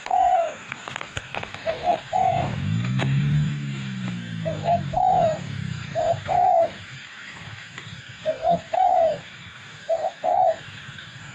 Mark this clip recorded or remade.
remade